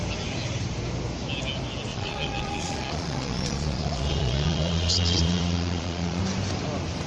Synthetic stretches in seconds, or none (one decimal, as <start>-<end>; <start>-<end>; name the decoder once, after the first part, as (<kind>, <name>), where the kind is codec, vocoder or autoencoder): 1.9-6.2 (vocoder, Vocos)